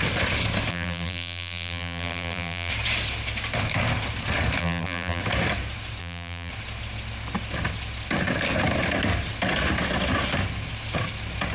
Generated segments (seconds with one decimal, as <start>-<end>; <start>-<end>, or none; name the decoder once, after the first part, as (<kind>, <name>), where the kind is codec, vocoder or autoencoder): 0.7-2.7 (vocoder, BigVGAN v2); 4.6-5.2; 6.0-6.5